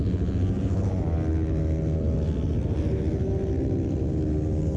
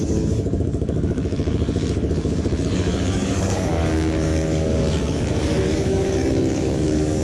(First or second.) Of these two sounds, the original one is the first